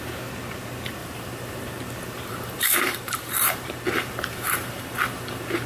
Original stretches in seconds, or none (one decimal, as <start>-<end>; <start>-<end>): 0.0-1.0; 1.8-2.3